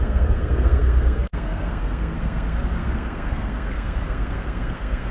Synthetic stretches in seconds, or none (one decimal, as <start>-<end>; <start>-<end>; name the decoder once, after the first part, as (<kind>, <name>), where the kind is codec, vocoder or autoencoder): 0.0-5.1 (codec, SNAC)